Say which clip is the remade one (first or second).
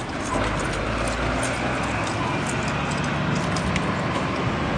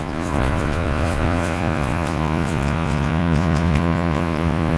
second